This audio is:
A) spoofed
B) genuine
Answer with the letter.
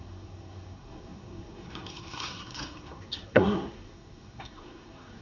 A